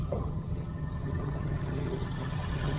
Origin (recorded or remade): remade